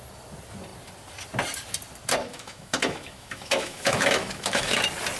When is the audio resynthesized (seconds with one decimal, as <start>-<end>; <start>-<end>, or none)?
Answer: 2.3-4.8